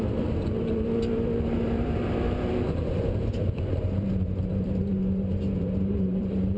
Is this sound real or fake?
fake